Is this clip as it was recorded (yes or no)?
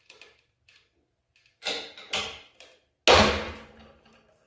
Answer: yes